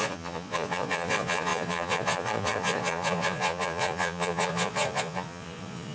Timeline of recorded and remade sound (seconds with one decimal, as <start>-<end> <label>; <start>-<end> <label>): 0.0-5.9 remade